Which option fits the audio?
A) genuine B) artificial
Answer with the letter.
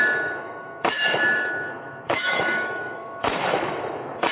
B